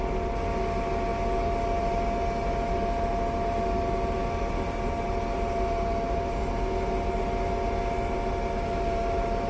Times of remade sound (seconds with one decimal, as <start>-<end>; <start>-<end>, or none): none